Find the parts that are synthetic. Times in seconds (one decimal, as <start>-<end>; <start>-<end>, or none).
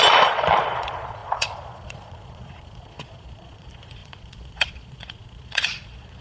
0.0-6.2